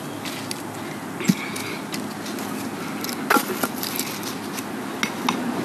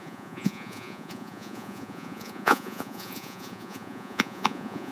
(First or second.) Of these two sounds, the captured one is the first